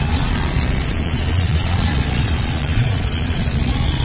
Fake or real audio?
fake